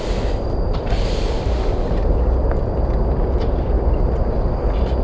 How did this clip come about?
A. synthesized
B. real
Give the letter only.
B